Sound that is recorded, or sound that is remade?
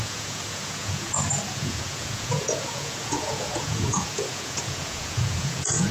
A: remade